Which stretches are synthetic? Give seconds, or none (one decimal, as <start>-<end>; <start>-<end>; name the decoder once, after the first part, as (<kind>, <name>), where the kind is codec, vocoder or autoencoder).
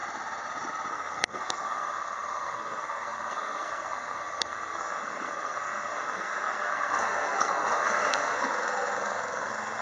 0.9-9.8 (codec, SNAC)